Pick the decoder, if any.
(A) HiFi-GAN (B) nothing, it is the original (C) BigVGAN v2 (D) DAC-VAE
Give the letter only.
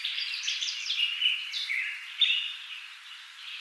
C